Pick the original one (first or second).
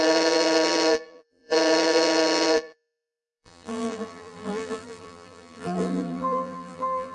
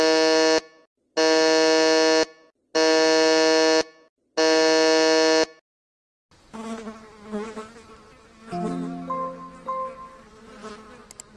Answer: second